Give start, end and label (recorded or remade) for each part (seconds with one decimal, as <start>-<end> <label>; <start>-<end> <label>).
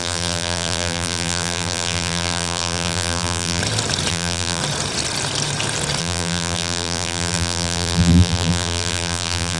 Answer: 0.0-3.6 remade; 3.6-4.1 recorded; 4.1-4.6 remade; 4.6-6.0 recorded; 6.0-9.6 remade